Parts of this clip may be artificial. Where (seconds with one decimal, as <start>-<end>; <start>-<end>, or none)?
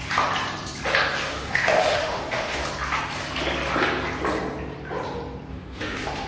1.3-2.6; 5.5-6.3